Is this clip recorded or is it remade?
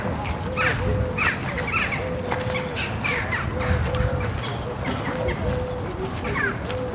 recorded